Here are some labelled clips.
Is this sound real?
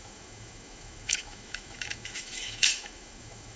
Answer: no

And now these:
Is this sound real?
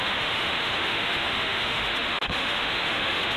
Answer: no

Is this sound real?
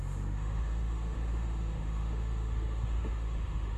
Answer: no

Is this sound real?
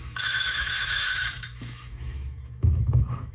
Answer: no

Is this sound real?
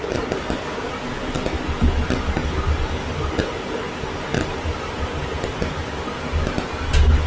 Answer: yes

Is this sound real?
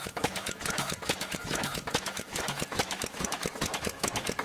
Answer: no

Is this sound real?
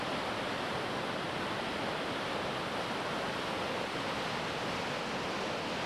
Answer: yes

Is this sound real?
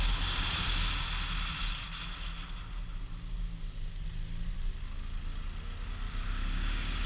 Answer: yes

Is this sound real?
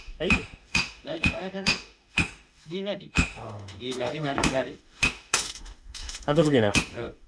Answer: no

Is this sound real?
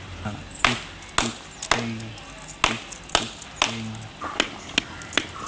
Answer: yes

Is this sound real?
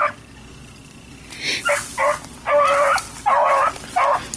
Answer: yes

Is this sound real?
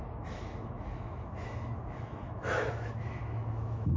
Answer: no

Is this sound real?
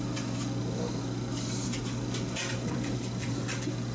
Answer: yes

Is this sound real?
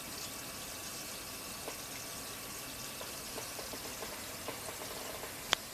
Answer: yes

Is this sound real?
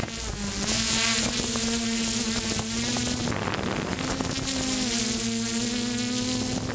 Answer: yes